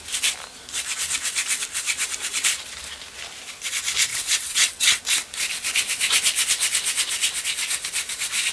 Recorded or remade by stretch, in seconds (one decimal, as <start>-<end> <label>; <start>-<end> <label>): 0.0-4.1 recorded; 4.1-5.0 remade; 5.0-8.5 recorded